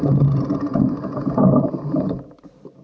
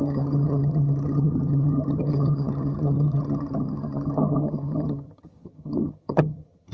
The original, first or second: first